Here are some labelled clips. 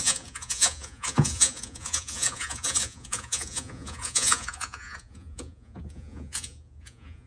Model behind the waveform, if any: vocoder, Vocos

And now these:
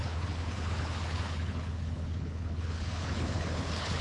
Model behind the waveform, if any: codec, HILCodec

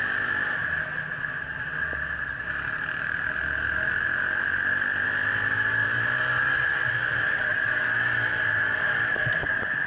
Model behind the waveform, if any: none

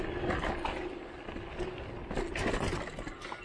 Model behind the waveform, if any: none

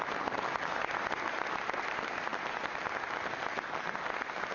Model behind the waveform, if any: none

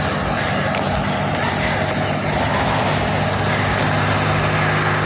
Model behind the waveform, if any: none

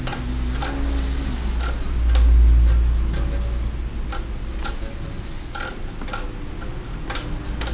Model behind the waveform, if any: none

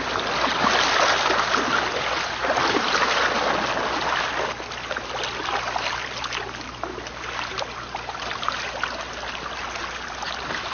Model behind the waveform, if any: none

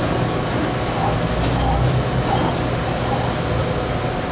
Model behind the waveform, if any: none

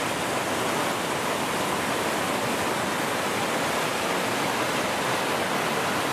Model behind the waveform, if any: none